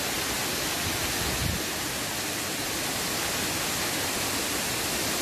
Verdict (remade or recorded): recorded